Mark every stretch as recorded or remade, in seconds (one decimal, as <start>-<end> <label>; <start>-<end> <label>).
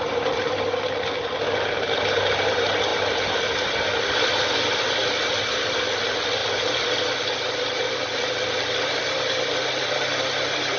0.0-6.4 recorded; 6.4-9.9 remade; 9.9-10.8 recorded